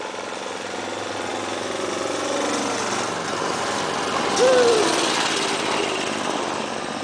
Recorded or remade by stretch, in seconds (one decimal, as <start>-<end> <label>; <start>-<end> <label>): 0.0-7.0 recorded